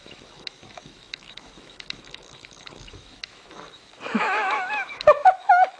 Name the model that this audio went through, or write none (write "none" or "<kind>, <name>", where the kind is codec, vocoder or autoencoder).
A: autoencoder, DAC-VAE